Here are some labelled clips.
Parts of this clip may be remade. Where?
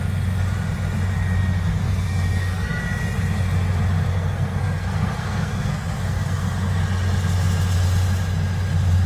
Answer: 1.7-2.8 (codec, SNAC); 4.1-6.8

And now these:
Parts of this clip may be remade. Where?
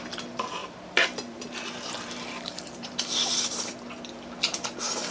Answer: 0.6-3.7 (vocoder, BigVGAN v2)